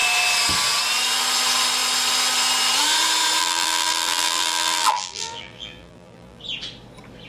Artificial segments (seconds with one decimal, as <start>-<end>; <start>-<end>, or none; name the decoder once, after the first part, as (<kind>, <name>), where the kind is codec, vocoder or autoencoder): 3.4-6.4 (vocoder, BigVGAN v2)